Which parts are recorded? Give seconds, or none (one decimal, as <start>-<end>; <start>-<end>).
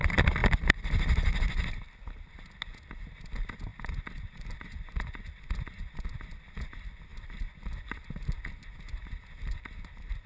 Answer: 0.0-10.3